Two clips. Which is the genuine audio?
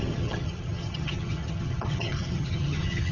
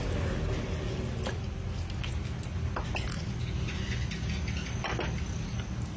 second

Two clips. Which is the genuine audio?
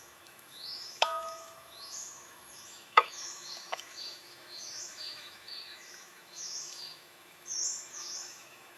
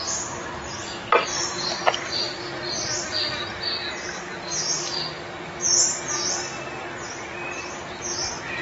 second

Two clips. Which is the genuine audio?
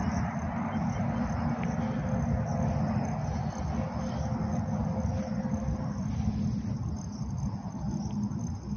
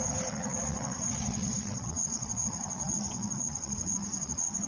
first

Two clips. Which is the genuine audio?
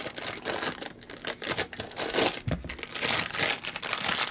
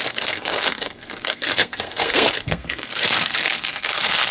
first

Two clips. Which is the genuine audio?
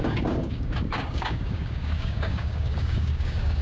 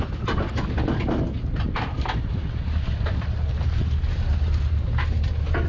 second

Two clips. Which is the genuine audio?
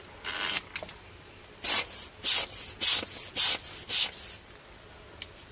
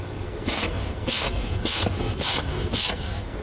first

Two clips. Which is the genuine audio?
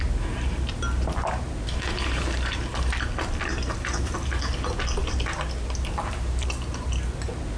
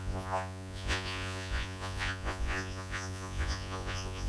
first